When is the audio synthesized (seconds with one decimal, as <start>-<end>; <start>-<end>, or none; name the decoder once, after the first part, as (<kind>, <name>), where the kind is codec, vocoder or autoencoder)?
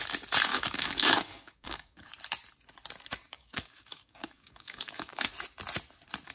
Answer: 0.5-2.1 (codec, DAC); 3.2-5.3